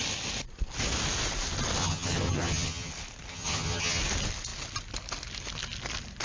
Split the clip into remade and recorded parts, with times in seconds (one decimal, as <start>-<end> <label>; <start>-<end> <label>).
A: 0.0-1.8 recorded; 1.8-2.9 remade; 2.9-3.3 recorded; 3.3-4.0 remade; 4.0-6.2 recorded